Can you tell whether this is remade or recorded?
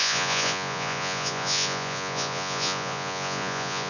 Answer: remade